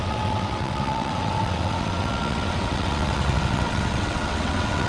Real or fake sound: fake